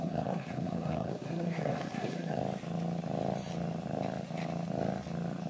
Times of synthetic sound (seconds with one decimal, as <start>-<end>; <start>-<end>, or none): 0.0-2.4